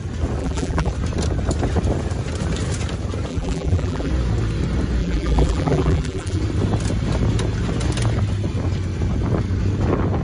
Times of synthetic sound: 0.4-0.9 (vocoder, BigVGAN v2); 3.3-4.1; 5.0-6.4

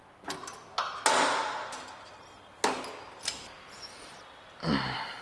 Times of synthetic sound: 3.1-5.2 (vocoder, BigVGAN v2)

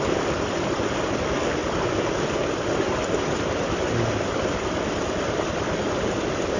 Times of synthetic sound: none

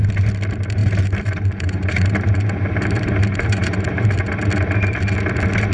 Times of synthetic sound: 0.8-4.2 (vocoder, BigVGAN v2)

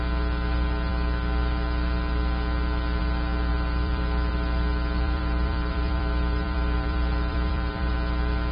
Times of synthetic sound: 3.5-7.9 (vocoder, BigVGAN v2)